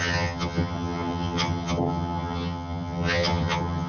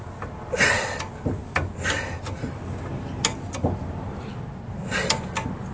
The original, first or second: second